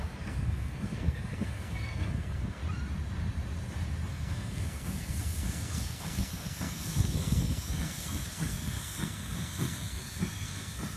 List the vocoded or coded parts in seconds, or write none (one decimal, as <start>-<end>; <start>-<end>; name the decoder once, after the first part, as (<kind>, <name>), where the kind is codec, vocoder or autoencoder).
0.0-2.6 (codec, SNAC); 4.1-11.0